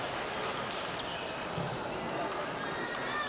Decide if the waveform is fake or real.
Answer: real